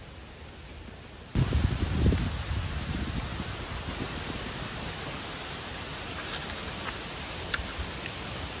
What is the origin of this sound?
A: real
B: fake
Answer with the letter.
A